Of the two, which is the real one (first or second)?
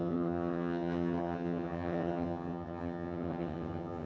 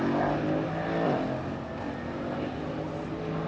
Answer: second